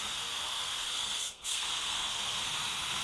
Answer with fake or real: fake